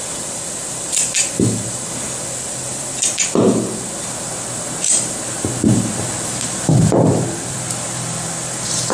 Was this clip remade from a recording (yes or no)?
yes